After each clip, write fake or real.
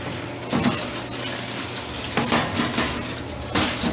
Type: real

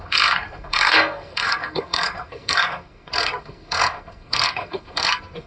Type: fake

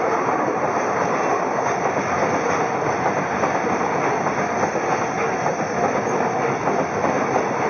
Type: real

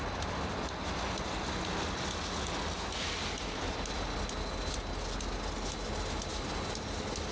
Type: real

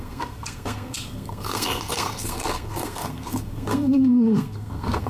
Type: fake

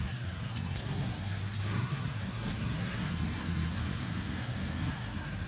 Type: fake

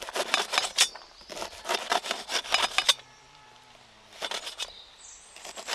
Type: real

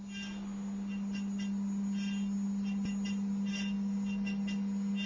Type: real